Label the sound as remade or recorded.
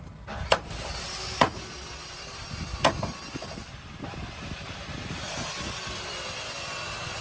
recorded